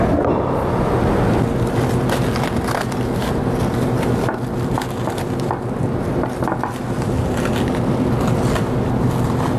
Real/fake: real